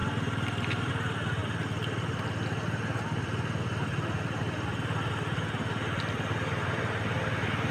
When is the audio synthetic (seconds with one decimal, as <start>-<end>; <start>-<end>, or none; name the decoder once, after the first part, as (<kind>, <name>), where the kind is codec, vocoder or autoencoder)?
0.0-0.9 (vocoder, BigVGAN v2)

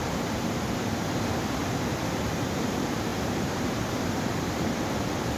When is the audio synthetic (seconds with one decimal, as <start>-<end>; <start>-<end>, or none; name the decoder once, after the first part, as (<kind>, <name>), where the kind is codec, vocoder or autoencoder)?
0.0-1.6 (vocoder, BigVGAN v2); 2.3-5.4

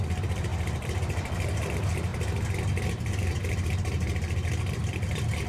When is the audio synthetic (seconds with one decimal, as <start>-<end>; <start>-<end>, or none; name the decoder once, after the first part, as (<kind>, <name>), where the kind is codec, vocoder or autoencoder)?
0.0-2.1 (vocoder, BigVGAN v2); 3.1-5.5

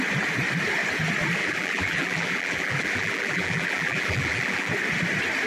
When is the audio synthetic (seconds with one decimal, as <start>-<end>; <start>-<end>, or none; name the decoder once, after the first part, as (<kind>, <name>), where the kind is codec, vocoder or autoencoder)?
1.4-4.7 (vocoder, BigVGAN v2)